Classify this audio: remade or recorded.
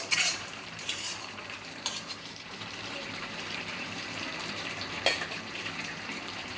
remade